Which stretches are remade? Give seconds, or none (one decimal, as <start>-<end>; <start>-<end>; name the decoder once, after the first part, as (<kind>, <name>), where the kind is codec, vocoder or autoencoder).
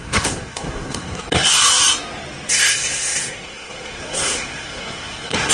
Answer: 0.0-1.6 (codec, SNAC); 2.5-5.5